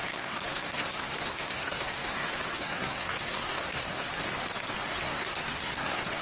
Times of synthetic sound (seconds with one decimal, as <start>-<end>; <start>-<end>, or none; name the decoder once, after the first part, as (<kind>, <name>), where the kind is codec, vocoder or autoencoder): 0.0-4.1 (codec, SNAC); 4.9-6.2